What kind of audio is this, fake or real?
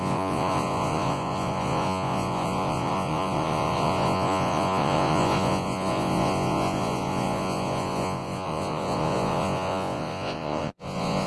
fake